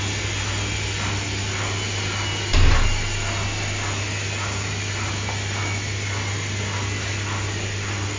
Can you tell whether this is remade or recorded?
recorded